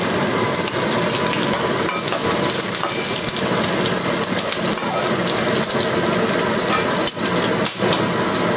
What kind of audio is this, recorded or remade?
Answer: recorded